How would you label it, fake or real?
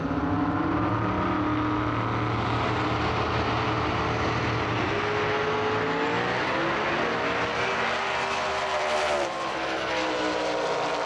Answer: real